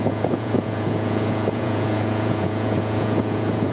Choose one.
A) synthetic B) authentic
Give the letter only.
A